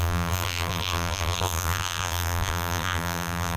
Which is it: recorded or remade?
remade